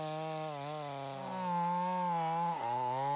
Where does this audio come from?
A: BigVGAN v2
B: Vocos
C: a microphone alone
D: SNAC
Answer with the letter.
C